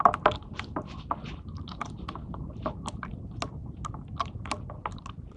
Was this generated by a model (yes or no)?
no